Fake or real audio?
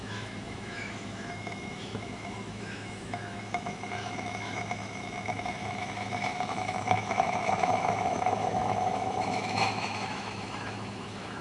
fake